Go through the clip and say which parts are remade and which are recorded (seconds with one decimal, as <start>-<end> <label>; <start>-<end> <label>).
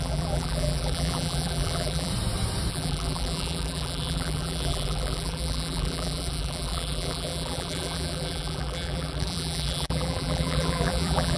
0.0-2.1 remade; 2.1-2.7 recorded; 2.7-11.4 remade